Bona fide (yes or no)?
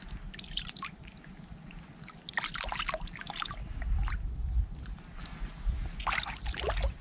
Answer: yes